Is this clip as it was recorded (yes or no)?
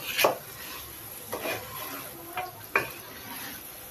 yes